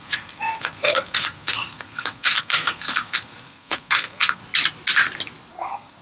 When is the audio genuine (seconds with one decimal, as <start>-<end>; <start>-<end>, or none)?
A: 4.4-5.5

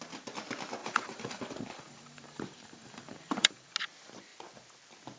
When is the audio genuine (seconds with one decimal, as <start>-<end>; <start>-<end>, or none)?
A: 0.0-0.8; 3.7-5.2